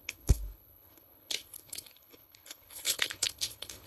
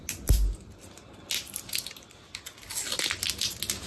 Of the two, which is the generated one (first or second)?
first